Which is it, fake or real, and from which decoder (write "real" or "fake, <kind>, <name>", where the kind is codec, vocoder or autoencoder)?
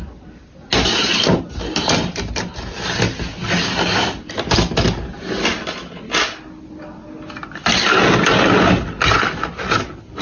real